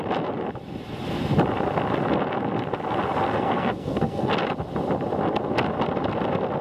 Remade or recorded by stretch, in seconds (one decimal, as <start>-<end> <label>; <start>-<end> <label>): 0.0-3.3 recorded; 3.3-4.3 remade; 4.3-6.6 recorded